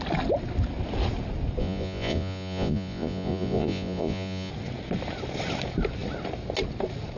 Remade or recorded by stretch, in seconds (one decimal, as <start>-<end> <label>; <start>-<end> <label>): 0.0-1.6 recorded; 1.6-4.5 remade; 4.5-7.2 recorded